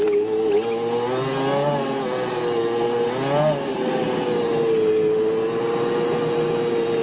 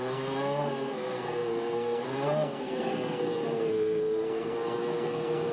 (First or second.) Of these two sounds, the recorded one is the first